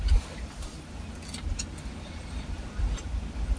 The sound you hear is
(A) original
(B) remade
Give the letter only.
A